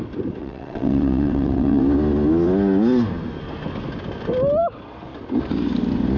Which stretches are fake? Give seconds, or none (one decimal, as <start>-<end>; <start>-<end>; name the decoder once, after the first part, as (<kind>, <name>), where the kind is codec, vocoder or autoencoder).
0.4-1.8 (vocoder, WaveNeXt)